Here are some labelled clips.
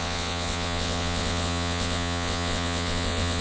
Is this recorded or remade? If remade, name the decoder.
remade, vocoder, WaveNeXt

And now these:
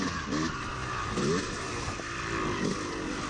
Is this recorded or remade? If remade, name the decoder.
recorded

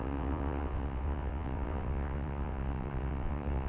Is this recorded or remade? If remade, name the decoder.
remade, vocoder, WaveNeXt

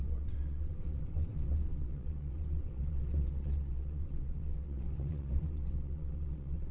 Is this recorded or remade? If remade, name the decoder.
remade, vocoder, WaveNeXt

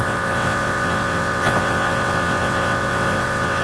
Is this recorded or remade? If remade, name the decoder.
remade, vocoder, WaveNeXt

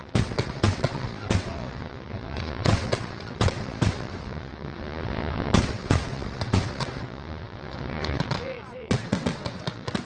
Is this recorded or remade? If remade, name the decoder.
remade, vocoder, WaveNeXt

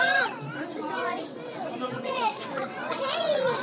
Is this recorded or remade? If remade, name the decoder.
remade, vocoder, WaveNeXt